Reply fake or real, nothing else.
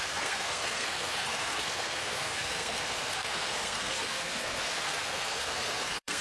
fake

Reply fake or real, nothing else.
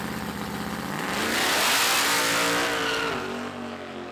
real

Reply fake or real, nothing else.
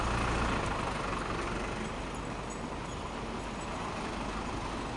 real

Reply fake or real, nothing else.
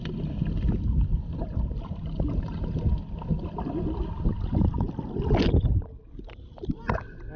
real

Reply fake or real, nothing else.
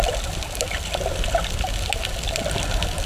real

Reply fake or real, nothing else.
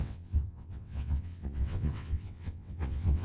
fake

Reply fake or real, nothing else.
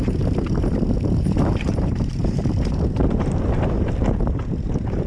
fake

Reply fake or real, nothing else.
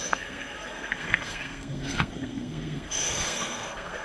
fake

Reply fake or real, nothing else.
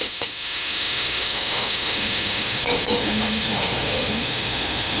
fake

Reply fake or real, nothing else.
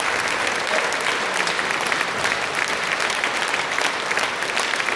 real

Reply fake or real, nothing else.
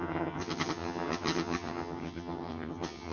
fake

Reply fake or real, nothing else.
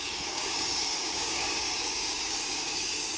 fake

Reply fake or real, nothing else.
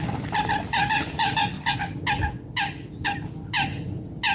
real